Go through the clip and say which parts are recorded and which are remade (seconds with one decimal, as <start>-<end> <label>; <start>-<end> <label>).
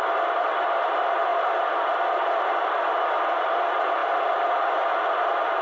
0.0-5.6 recorded